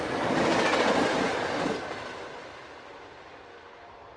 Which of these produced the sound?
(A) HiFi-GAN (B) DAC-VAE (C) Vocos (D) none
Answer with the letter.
D